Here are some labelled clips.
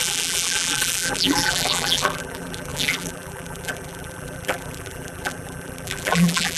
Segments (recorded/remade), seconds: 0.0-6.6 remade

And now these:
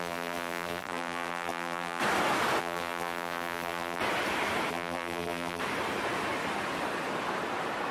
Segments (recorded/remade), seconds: 0.0-2.0 remade; 2.0-2.6 recorded; 2.6-4.0 remade; 4.0-4.7 recorded; 4.7-5.6 remade; 5.6-7.9 recorded

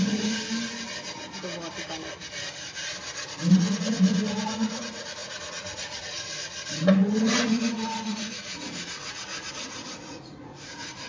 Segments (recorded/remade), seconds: 0.0-0.4 remade; 0.4-3.5 recorded; 3.5-11.1 remade

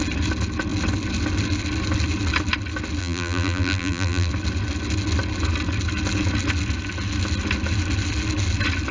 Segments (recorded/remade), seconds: 0.0-3.0 recorded; 3.0-4.3 remade; 4.3-8.9 recorded

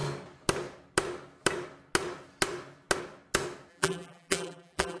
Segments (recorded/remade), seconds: 0.0-3.7 recorded; 3.7-5.0 remade